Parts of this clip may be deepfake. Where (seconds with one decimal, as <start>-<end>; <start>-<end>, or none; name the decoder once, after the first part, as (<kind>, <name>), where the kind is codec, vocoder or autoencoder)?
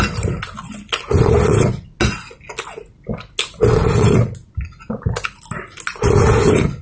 none